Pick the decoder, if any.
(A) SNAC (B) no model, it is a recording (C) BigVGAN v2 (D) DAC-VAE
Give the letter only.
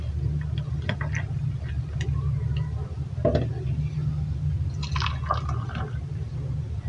B